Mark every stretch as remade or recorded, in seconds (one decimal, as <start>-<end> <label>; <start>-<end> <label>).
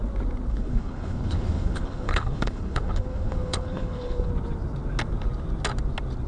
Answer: 0.0-0.5 recorded; 0.5-4.3 remade; 4.3-6.3 recorded